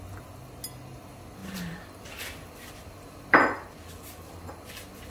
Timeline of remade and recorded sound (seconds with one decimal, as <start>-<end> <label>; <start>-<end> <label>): 0.0-5.1 recorded